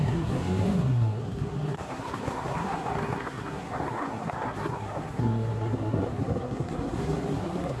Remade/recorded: remade